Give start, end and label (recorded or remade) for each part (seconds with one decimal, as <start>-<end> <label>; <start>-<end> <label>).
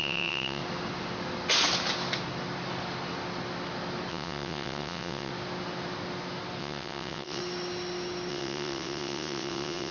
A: 0.0-0.6 remade; 0.6-4.1 recorded; 4.1-5.3 remade; 5.3-6.6 recorded; 6.6-7.4 remade; 7.4-8.3 recorded; 8.3-9.9 remade